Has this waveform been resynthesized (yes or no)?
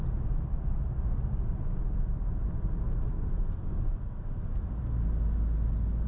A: no